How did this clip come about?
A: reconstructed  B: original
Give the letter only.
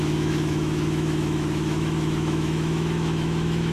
A